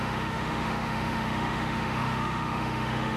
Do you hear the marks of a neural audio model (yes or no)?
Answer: yes